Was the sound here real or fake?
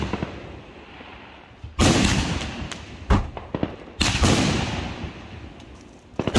real